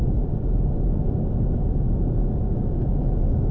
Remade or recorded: recorded